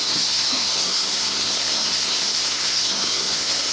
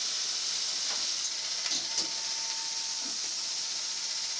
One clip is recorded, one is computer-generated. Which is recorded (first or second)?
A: second